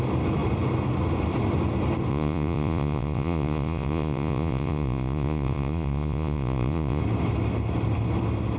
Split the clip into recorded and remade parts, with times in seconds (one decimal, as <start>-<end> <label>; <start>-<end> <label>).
0.0-2.1 recorded; 2.1-7.0 remade; 7.0-8.6 recorded